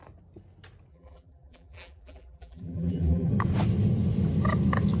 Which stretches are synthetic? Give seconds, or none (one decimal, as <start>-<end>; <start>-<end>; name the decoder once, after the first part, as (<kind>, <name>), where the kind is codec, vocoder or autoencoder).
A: 0.9-3.3 (vocoder, BigVGAN v2)